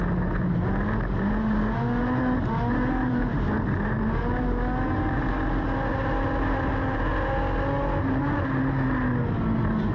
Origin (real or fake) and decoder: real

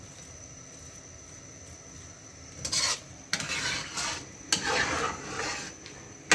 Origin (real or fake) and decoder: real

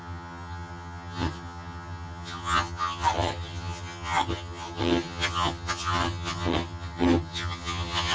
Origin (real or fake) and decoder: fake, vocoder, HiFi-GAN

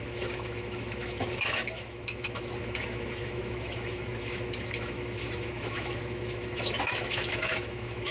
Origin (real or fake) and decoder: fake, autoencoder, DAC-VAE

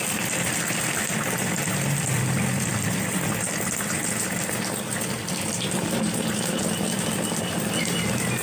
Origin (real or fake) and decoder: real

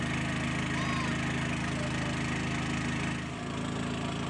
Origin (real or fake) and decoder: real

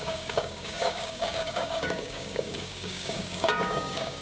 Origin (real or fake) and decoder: fake, codec, DAC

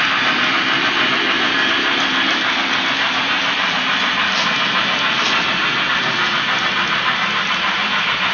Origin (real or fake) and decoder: real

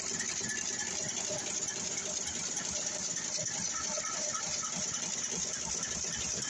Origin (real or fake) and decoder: fake, vocoder, BigVGAN v2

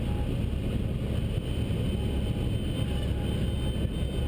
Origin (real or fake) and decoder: real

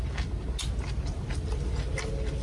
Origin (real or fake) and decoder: real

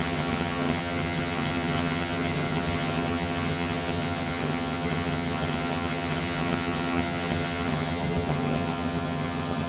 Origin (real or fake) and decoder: fake, vocoder, HiFi-GAN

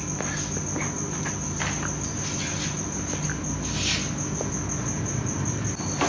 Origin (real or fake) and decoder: real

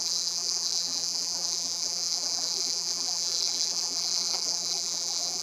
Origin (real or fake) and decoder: fake, vocoder, BigVGAN v2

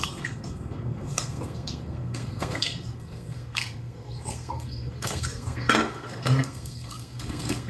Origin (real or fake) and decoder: fake, codec, SNAC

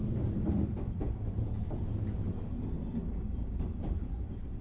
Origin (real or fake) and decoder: real